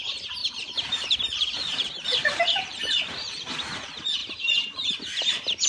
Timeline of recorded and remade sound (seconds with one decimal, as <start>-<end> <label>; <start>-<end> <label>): 0.0-0.4 recorded; 0.4-3.8 remade; 3.8-4.2 recorded; 4.2-4.9 remade; 4.9-5.7 recorded

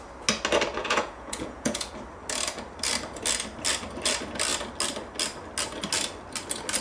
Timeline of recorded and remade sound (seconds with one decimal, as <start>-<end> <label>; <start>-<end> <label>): 0.0-0.8 recorded; 0.8-1.9 remade; 1.9-6.8 recorded

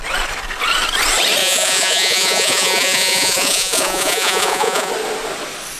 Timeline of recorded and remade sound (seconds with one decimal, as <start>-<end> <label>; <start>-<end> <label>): 0.0-1.4 recorded; 1.4-4.9 remade; 4.9-5.8 recorded

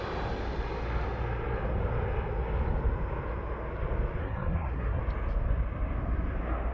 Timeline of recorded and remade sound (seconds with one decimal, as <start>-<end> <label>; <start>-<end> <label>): 0.0-4.2 recorded; 4.2-5.0 remade; 5.0-6.7 recorded